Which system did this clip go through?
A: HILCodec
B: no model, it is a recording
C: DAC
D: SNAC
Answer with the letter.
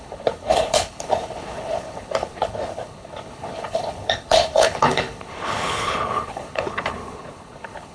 A